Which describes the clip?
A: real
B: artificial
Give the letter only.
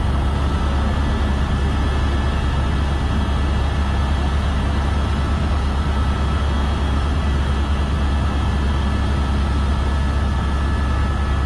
A